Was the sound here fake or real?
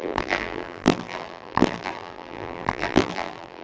fake